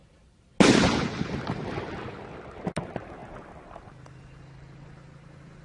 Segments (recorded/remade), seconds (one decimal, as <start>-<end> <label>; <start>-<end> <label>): 0.0-5.6 recorded